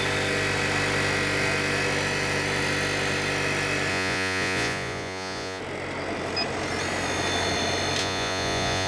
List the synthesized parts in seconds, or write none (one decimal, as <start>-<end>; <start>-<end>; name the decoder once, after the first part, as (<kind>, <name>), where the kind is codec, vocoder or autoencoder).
3.9-5.6 (vocoder, Vocos); 8.0-8.9